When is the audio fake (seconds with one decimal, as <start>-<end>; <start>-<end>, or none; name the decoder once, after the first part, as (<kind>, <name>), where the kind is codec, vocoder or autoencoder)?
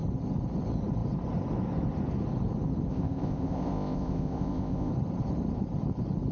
2.9-4.9 (codec, ZipCodec)